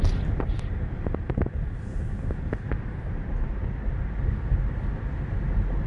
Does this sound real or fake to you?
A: real